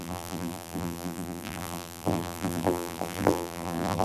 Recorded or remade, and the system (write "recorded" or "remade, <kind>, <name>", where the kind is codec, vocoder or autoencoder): remade, vocoder, BigVGAN v2